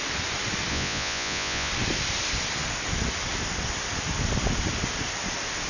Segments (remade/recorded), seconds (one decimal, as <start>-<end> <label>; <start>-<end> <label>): 0.0-0.7 recorded; 0.7-1.7 remade; 1.7-5.7 recorded